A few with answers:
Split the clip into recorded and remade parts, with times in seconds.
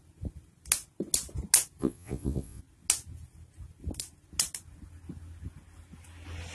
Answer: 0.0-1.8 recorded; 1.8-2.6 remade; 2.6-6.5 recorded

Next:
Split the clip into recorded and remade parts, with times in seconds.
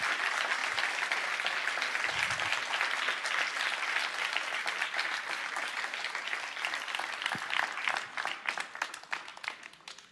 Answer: 0.0-10.1 recorded